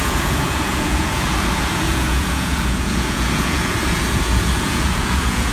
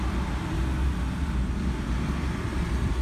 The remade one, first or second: first